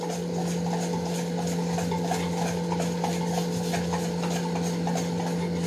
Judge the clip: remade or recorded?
recorded